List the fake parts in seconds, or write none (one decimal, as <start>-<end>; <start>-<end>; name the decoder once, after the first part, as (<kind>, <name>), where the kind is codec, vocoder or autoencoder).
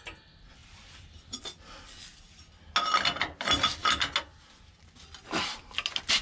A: 0.6-1.2 (vocoder, BigVGAN v2)